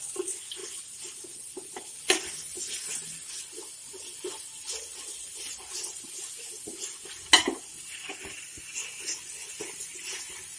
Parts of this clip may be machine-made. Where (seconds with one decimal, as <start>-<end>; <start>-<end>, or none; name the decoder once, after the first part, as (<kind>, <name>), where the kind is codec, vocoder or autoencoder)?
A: none